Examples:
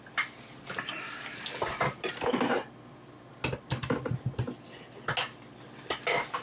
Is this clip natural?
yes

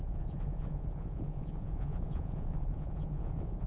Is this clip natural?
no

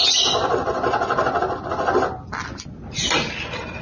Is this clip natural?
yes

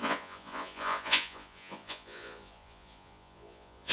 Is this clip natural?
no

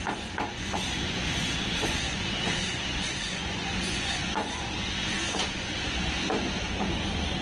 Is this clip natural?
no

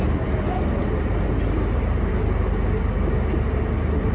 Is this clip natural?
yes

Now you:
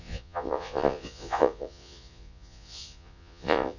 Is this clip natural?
no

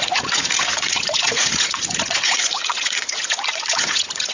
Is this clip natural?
no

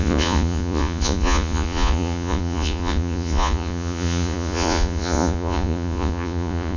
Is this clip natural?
no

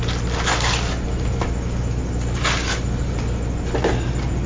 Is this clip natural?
yes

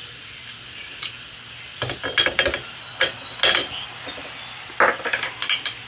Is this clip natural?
yes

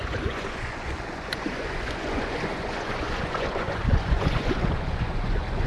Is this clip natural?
no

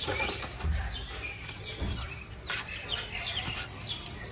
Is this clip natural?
yes